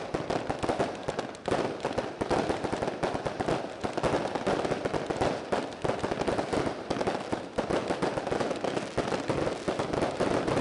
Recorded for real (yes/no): yes